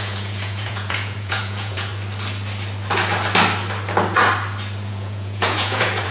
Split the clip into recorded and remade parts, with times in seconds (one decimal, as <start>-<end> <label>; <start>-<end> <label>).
0.0-1.9 remade; 1.9-4.9 recorded; 4.9-6.1 remade